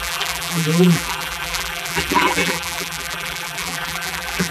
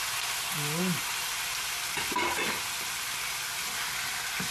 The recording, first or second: second